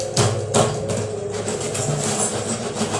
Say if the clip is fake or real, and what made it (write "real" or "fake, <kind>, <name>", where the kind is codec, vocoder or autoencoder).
real